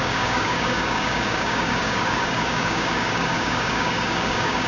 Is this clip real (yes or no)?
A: no